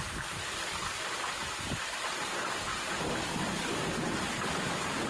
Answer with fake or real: real